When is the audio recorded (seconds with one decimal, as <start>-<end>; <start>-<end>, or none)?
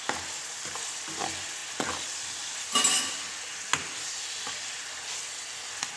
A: 0.0-6.0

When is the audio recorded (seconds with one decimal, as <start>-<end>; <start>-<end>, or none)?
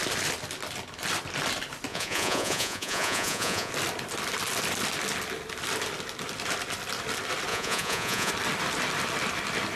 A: 0.0-1.9; 3.7-7.5; 8.3-9.8